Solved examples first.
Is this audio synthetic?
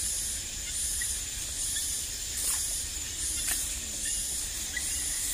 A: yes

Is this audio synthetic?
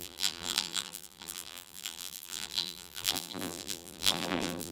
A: yes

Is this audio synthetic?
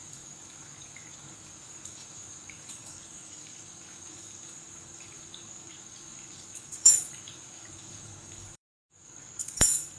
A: yes